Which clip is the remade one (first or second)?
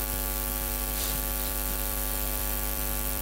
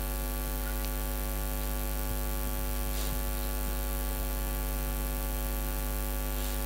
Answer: first